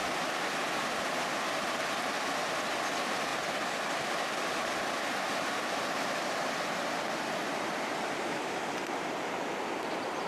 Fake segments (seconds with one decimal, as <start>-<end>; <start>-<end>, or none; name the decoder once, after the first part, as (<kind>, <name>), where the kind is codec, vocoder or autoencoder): none